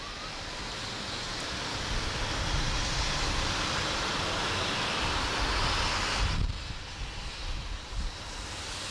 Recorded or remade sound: recorded